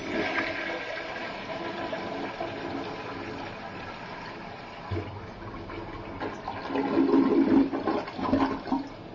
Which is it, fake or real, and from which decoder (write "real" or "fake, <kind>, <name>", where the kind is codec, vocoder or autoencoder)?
real